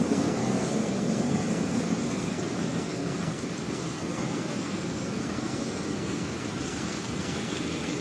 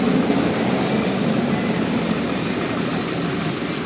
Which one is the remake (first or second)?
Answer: first